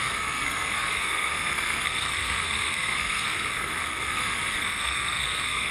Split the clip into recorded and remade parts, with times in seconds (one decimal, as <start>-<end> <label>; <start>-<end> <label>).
0.0-5.7 remade